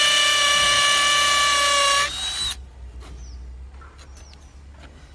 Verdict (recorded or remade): recorded